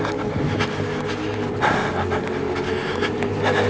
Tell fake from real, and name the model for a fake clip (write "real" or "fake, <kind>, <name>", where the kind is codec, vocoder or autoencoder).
real